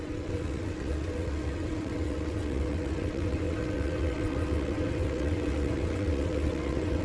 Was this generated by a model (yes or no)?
yes